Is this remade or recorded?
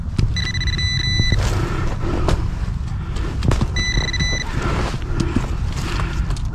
recorded